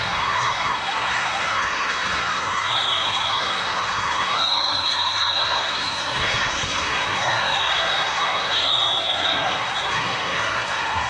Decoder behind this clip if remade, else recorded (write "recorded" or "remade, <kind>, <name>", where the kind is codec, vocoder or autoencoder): remade, codec, SNAC